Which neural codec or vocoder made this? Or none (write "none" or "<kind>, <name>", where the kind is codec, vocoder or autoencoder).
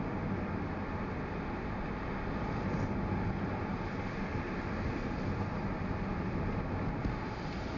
none